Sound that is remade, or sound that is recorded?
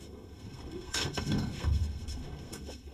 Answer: remade